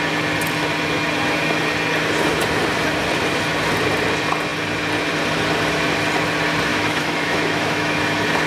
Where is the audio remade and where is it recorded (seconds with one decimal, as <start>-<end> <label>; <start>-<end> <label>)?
0.0-6.7 recorded; 6.7-8.0 remade; 8.0-8.5 recorded